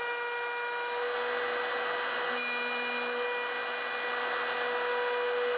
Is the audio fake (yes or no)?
no